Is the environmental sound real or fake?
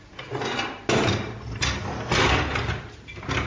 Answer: real